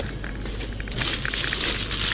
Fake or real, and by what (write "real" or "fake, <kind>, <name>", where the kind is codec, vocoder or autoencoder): real